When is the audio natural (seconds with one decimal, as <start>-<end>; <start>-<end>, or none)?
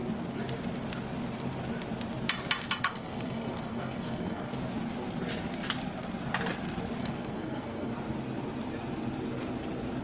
0.0-2.8; 4.5-7.0; 7.9-10.0